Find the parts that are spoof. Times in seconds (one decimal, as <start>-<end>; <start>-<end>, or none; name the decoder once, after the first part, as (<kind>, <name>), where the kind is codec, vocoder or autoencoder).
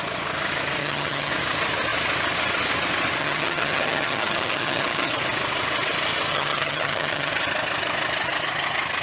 0.8-1.3 (vocoder, HiFi-GAN); 3.2-5.1; 6.3-7.3